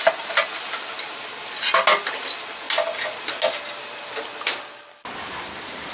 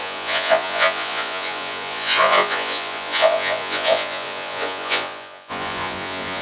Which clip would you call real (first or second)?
first